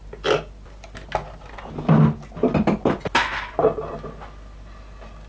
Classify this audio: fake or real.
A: real